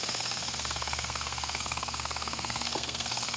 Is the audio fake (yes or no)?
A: yes